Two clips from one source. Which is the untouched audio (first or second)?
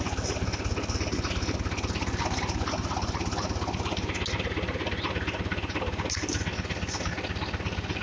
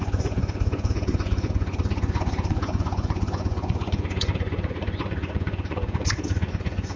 first